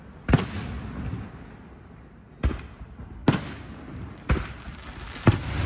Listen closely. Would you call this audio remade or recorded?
recorded